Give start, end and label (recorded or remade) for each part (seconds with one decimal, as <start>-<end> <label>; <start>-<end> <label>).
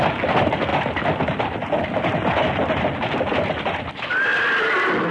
0.0-5.1 recorded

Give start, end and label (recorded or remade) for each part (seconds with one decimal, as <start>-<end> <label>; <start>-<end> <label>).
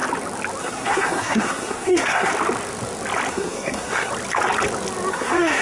0.0-0.6 recorded; 0.6-2.3 remade; 2.3-3.3 recorded; 3.3-4.1 remade; 4.1-5.1 recorded; 5.1-5.6 remade